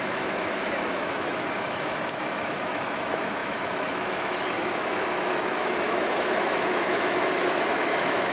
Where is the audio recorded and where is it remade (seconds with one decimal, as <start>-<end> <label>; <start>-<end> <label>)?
0.0-8.3 remade